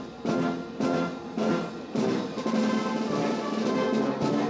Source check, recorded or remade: recorded